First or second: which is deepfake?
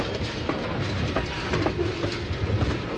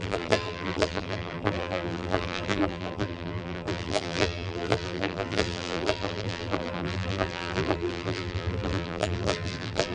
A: second